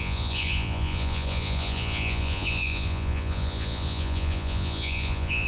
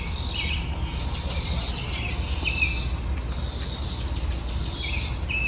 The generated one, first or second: first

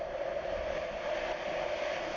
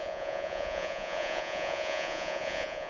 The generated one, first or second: second